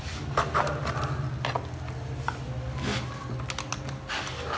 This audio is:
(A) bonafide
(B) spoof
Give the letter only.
A